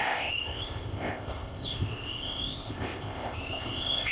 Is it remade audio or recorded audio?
remade